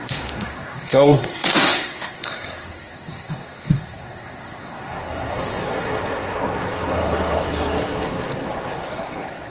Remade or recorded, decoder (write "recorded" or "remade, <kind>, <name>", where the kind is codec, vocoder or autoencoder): remade, codec, SNAC